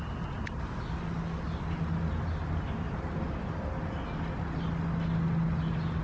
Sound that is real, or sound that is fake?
real